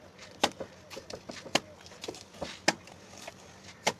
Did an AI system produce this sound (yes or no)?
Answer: no